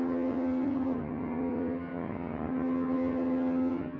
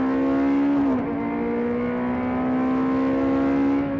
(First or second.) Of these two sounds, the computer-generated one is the first